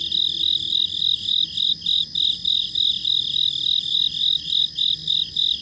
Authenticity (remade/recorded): recorded